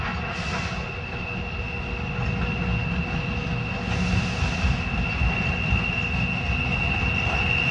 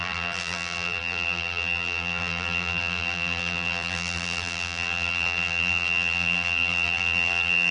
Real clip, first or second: first